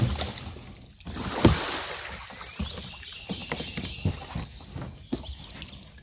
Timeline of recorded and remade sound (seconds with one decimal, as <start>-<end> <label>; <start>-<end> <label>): 0.0-6.0 recorded